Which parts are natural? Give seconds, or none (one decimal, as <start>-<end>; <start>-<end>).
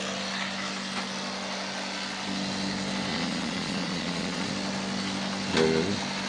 0.0-3.1; 4.5-6.3